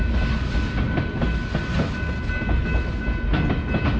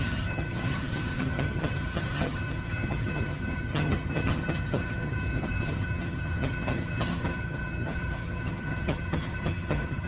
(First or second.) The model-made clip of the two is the second